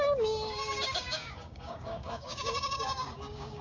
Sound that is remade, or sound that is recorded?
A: remade